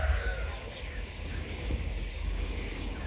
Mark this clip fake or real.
fake